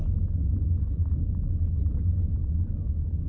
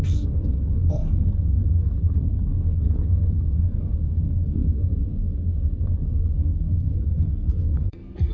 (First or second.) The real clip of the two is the first